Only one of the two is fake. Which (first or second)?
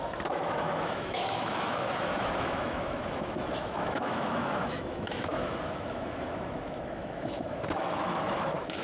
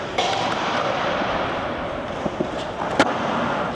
first